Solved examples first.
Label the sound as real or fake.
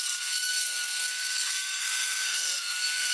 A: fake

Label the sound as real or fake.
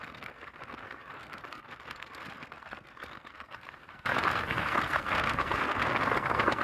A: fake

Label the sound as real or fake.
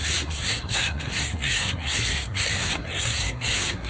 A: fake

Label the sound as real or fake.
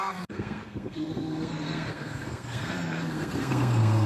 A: fake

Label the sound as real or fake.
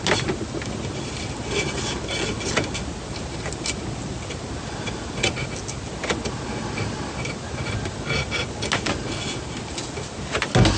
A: real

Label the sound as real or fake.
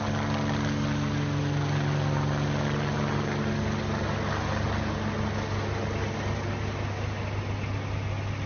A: real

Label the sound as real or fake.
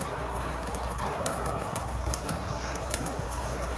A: fake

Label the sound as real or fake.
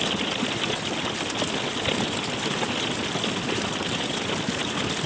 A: real